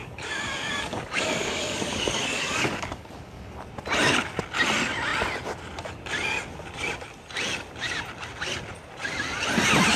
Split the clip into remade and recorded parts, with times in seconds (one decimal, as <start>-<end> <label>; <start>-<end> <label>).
0.0-3.6 remade; 3.6-10.0 recorded